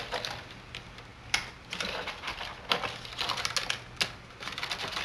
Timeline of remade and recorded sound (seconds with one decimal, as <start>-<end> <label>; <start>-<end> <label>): 0.0-5.0 recorded